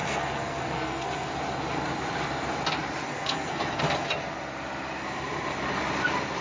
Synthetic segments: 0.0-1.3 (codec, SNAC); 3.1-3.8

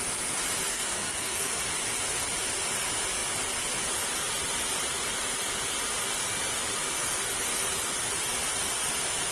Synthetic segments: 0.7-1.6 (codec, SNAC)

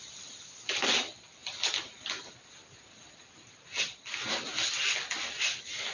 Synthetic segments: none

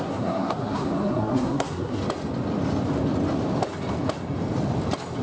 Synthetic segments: 0.0-2.0 (codec, SNAC)

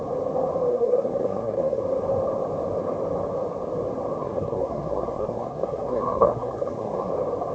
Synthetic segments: 0.7-1.8 (codec, SNAC); 4.2-7.1

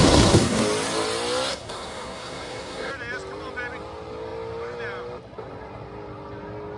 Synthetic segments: 0.0-0.6 (codec, SNAC); 1.5-2.9

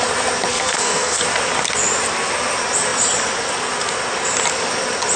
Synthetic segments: 0.5-1.2 (codec, SNAC)